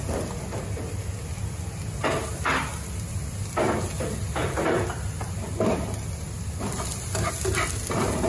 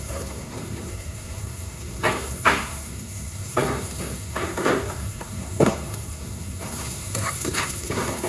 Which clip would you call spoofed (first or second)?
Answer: second